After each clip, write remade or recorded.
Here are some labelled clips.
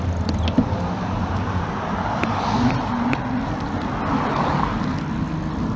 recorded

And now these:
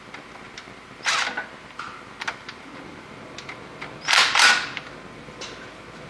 recorded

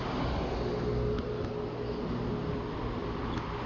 recorded